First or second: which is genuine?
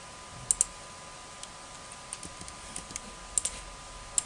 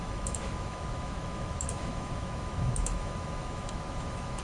first